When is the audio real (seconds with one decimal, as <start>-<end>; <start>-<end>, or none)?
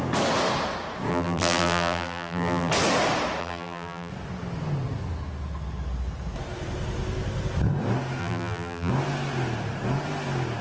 0.0-1.1; 2.7-3.4; 4.1-8.2; 8.9-10.6